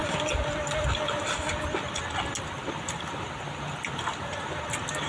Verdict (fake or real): real